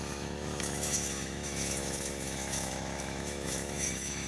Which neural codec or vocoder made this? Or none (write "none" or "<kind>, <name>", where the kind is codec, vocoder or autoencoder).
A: autoencoder, DAC-VAE